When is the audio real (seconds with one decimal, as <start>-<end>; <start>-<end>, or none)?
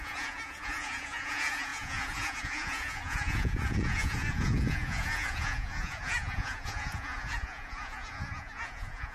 none